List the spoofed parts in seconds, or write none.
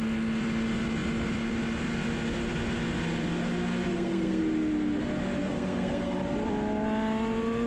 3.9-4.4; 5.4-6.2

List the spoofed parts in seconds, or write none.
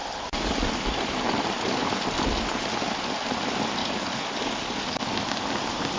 3.8-5.0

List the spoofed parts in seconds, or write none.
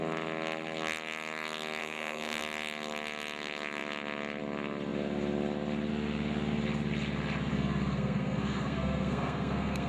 1.8-2.4; 7.5-9.9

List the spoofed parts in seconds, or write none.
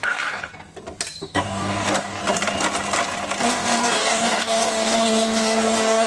0.0-0.5; 1.2-2.2; 3.5-6.1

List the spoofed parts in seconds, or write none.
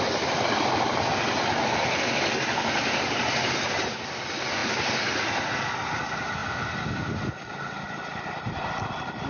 none